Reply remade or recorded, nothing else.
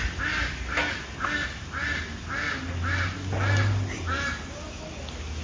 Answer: recorded